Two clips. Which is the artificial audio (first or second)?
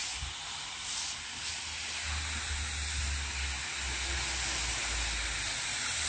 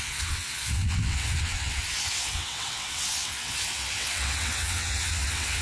second